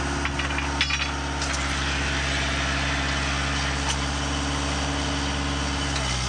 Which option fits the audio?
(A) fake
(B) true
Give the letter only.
B